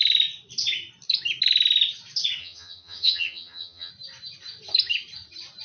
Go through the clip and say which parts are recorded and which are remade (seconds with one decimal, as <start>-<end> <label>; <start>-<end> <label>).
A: 0.0-2.4 recorded; 2.4-3.9 remade; 3.9-5.6 recorded